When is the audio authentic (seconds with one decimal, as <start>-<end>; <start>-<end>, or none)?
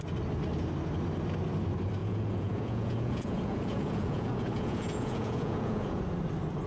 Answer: 0.0-2.0; 6.0-6.7